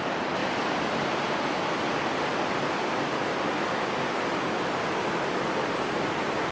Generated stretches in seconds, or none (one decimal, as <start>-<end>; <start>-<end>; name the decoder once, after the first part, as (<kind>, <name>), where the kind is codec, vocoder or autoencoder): none